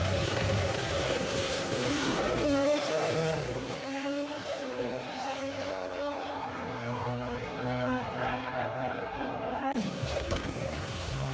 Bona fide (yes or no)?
no